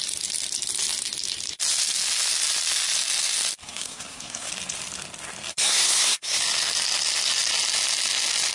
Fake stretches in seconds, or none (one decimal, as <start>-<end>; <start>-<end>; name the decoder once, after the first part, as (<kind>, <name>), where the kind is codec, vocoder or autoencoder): 3.6-4.5 (codec, SNAC); 5.5-6.4